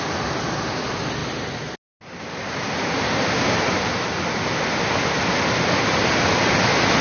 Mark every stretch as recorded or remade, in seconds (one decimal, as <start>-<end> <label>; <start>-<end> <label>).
0.0-7.0 recorded